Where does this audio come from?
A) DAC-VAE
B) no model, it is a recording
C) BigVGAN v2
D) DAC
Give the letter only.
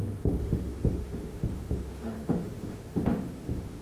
A